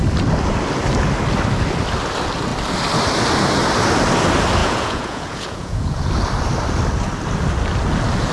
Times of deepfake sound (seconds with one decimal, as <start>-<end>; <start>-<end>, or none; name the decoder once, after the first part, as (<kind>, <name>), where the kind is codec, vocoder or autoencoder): 4.6-6.1 (vocoder, Vocos)